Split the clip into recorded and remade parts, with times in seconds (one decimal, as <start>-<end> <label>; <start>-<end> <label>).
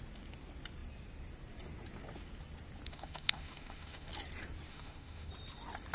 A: 0.0-2.9 recorded; 2.9-4.1 remade; 4.1-4.7 recorded; 4.7-5.3 remade; 5.3-5.9 recorded